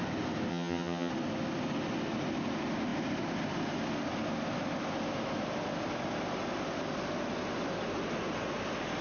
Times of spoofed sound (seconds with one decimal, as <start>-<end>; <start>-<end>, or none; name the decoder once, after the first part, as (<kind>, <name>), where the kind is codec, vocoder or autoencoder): 0.5-1.1 (vocoder, HiFi-GAN)